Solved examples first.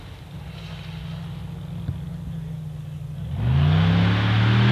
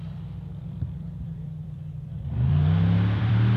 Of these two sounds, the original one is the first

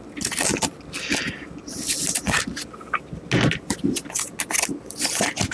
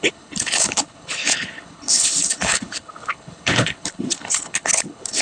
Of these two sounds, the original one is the first